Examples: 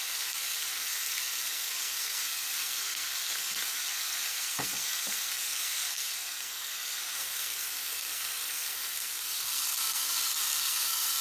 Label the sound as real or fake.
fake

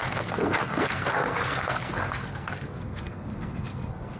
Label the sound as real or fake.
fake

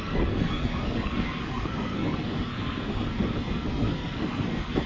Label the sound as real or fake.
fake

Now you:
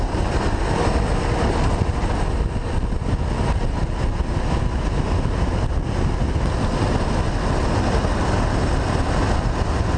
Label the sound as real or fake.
real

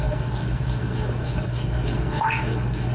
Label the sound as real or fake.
fake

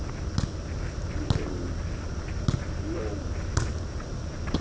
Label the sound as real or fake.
real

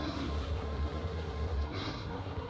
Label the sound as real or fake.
fake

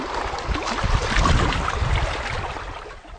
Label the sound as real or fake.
real